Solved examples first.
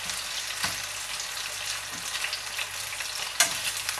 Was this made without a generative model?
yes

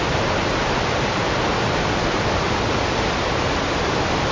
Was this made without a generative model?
yes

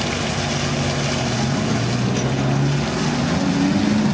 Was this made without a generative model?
yes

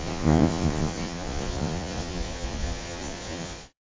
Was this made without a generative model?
no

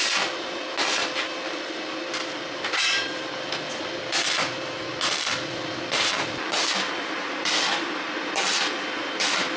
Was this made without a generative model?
no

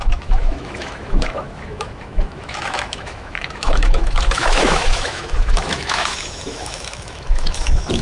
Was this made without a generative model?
no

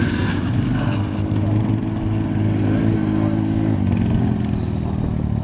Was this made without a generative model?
yes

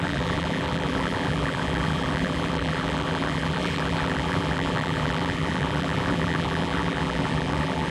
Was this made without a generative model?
no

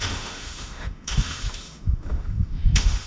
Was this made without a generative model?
no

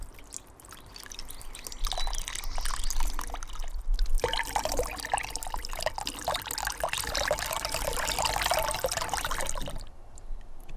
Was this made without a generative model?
yes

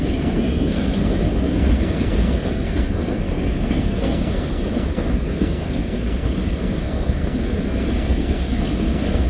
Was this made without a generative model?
no